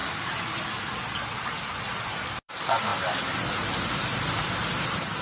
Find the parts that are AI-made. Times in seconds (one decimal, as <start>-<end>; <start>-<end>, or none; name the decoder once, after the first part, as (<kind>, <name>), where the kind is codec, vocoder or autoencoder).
0.0-2.5 (vocoder, BigVGAN v2); 2.9-3.7